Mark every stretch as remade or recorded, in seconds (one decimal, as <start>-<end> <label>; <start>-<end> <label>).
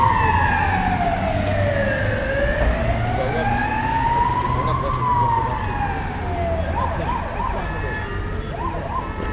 0.0-9.3 recorded